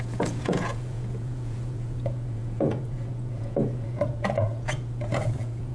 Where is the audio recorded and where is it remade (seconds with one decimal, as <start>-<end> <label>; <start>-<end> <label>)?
0.0-5.7 remade